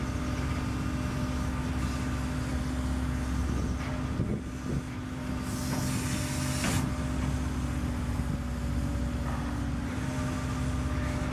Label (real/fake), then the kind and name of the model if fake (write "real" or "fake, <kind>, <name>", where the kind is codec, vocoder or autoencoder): real